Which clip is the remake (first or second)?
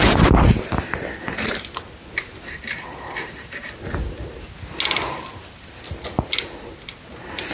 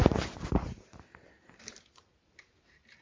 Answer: second